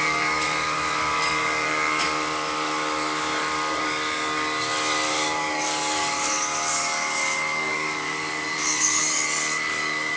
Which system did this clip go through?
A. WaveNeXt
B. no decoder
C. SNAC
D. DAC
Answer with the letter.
D